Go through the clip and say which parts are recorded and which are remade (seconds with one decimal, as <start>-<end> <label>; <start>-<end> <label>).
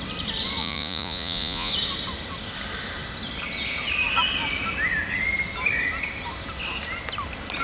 0.0-0.6 recorded; 0.6-1.7 remade; 1.7-7.6 recorded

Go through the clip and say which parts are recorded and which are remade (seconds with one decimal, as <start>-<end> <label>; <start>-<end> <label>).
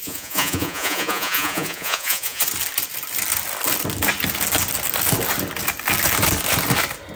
0.0-2.4 remade; 2.4-7.2 recorded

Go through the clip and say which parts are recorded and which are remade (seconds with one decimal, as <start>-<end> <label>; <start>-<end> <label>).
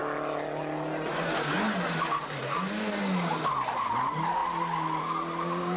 0.0-5.8 recorded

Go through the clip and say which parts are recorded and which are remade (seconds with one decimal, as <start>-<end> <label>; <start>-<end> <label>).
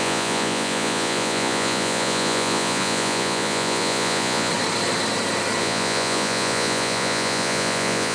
0.0-4.5 remade; 4.5-5.6 recorded; 5.6-8.1 remade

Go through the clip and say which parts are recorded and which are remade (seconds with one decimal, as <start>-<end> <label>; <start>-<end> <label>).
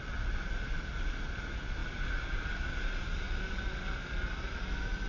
0.0-5.1 recorded